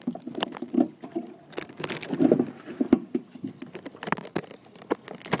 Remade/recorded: recorded